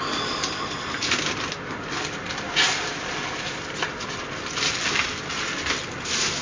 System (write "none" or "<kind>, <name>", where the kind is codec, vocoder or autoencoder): vocoder, BigVGAN v2